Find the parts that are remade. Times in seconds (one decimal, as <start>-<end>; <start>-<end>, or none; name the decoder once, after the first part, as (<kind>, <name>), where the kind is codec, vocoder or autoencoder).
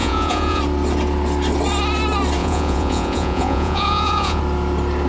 0.0-0.6 (vocoder, Vocos); 2.4-4.4